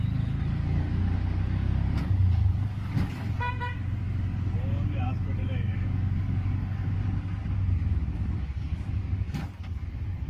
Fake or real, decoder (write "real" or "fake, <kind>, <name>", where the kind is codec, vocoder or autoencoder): fake, codec, DAC